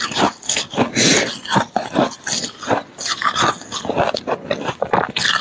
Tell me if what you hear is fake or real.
real